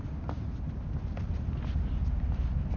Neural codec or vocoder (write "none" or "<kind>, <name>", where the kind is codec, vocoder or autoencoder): none